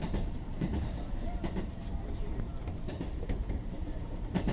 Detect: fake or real fake